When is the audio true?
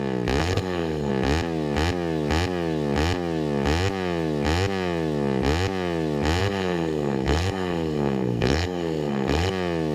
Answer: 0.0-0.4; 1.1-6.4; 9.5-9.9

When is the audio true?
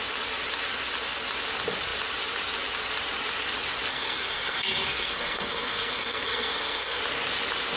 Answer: 0.0-3.9; 7.0-7.8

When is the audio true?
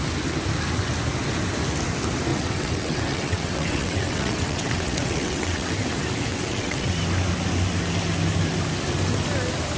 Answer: 0.0-2.3; 5.7-6.3; 7.0-9.8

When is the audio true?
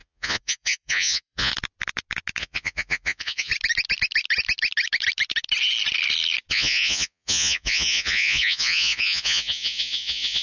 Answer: 1.5-2.4; 3.5-6.5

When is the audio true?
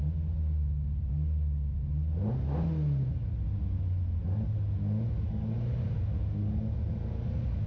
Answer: 0.0-7.7